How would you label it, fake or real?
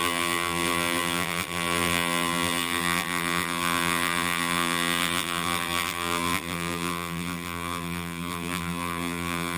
fake